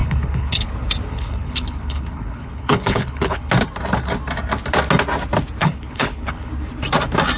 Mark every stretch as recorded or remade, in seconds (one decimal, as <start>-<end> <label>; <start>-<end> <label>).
0.0-0.7 remade; 0.7-1.1 recorded; 1.1-3.5 remade; 3.5-5.6 recorded; 5.6-6.5 remade; 6.5-7.4 recorded